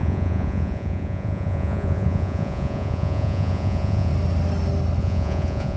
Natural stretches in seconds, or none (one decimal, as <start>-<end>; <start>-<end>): 4.1-5.0